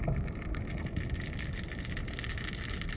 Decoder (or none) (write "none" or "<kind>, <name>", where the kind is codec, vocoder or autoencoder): none